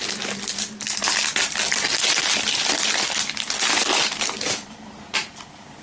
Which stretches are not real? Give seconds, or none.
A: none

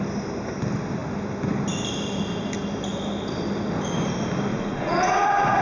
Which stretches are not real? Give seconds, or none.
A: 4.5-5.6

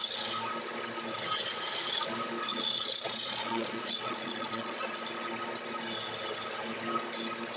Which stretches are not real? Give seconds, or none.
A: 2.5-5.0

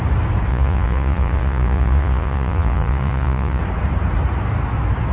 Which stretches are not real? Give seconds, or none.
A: 0.5-3.6

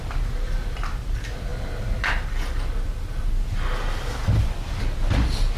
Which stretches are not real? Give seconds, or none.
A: none